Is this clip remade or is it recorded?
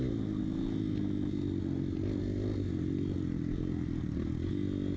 recorded